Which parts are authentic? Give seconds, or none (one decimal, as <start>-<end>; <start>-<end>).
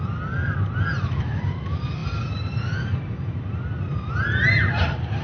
0.0-5.2